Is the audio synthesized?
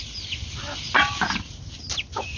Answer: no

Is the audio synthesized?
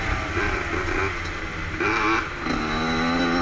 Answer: no